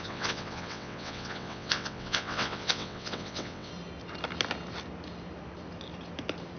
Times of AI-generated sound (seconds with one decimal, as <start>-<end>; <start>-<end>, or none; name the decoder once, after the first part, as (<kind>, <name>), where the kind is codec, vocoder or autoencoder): 0.0-3.7 (vocoder, WaveNeXt)